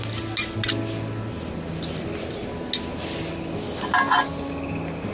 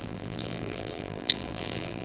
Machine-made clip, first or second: second